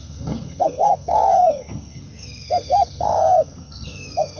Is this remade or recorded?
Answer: remade